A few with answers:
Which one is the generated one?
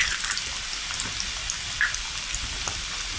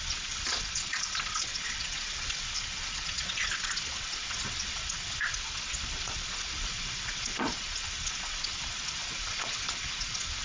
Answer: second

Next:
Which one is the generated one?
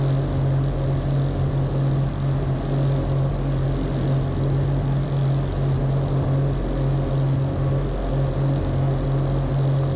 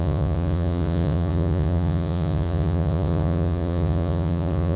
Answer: second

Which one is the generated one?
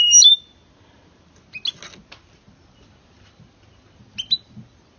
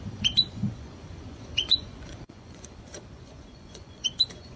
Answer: second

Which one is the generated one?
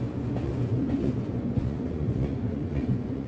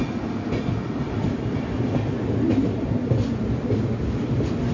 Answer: first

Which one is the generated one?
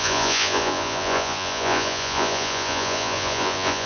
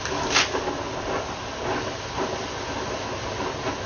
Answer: first